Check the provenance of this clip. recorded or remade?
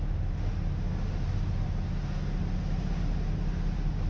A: recorded